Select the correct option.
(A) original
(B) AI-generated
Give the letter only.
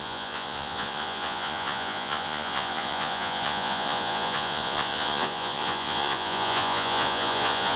B